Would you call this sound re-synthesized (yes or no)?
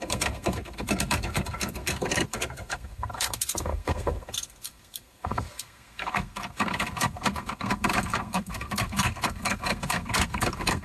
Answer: yes